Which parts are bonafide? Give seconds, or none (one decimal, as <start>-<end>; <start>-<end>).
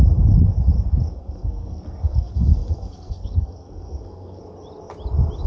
0.0-1.1; 4.4-5.5